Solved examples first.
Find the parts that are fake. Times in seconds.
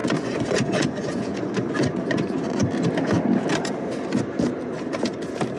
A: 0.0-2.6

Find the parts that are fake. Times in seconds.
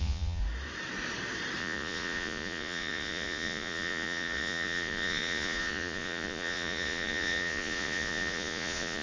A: 0.0-0.4; 1.6-9.0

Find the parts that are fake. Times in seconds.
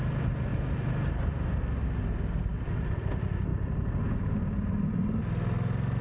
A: 0.5-1.6; 2.5-3.1; 3.5-5.2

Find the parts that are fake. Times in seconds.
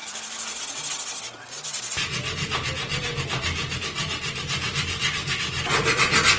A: 0.0-0.6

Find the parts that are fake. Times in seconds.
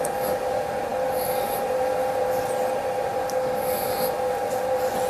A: 0.9-1.9; 3.1-4.3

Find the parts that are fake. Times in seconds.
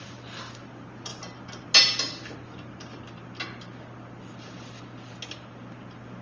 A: none